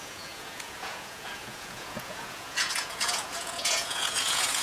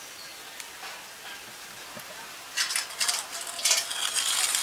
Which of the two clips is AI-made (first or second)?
first